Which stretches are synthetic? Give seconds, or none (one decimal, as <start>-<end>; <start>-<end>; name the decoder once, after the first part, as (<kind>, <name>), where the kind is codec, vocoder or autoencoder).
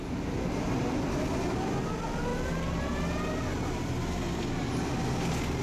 0.7-2.3 (vocoder, BigVGAN v2)